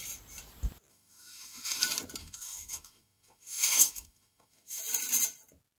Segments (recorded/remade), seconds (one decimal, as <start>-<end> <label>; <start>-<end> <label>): 0.0-0.9 recorded; 0.9-1.8 remade; 1.8-2.2 recorded; 2.2-4.8 remade; 4.8-5.8 recorded